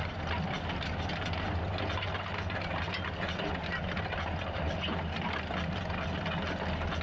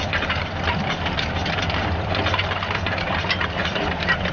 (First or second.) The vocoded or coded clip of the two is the second